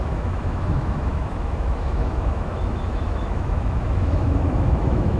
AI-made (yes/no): yes